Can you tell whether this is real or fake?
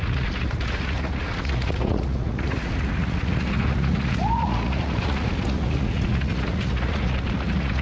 fake